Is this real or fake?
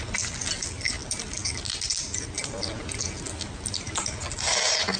real